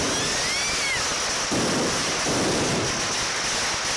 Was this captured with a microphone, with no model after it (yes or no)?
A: yes